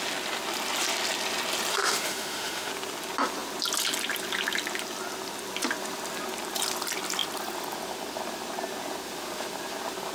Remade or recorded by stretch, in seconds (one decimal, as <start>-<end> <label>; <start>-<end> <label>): 0.0-1.7 recorded; 1.7-2.7 remade; 2.7-10.1 recorded